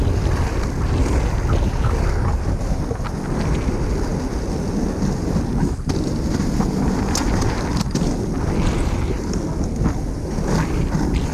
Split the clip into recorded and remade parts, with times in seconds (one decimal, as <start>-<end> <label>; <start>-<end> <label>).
0.0-11.3 recorded